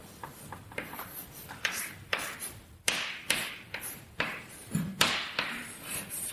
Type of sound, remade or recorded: remade